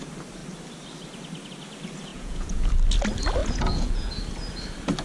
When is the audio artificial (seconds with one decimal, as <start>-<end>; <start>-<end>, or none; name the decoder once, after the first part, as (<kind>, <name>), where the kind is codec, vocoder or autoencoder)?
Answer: 2.1-2.7 (vocoder, Vocos); 3.4-4.1